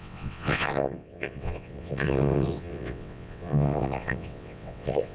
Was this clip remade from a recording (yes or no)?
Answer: yes